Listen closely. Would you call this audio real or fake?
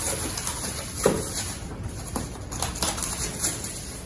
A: real